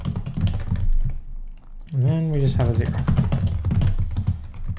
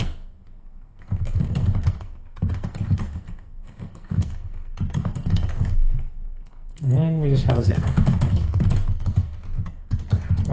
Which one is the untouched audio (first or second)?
first